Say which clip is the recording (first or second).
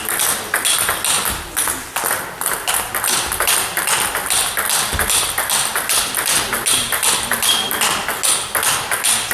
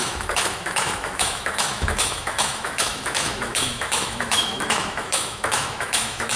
first